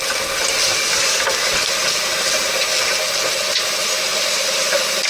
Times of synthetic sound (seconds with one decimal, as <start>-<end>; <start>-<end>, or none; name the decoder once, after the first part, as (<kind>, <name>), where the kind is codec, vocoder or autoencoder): 4.1-5.1 (vocoder, BigVGAN v2)